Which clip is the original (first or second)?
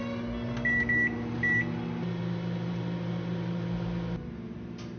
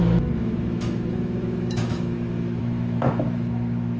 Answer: first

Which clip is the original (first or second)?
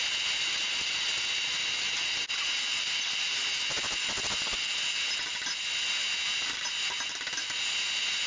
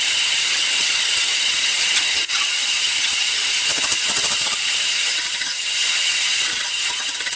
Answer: first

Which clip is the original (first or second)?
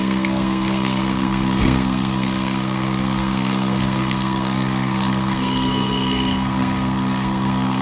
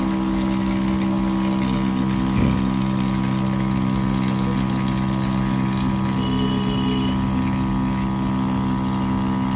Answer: second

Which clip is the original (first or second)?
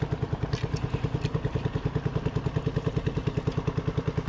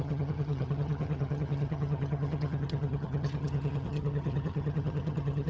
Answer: first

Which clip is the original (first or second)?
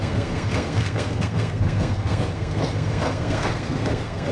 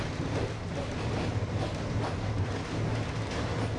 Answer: second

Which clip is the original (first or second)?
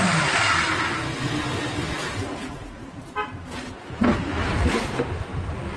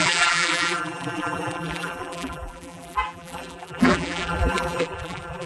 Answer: first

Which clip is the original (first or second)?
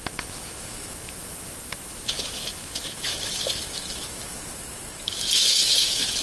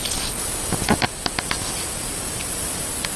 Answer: second